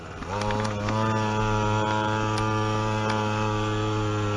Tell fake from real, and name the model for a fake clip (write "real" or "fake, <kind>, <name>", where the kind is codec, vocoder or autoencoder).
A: real